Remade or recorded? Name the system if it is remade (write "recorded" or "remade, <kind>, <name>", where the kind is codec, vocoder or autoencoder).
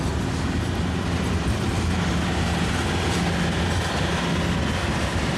recorded